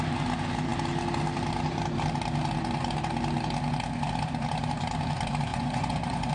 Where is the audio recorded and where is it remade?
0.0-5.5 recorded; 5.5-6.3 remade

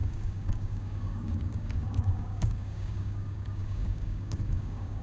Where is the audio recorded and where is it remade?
0.0-5.0 remade

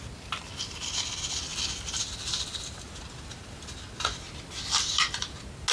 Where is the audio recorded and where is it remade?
0.0-5.7 recorded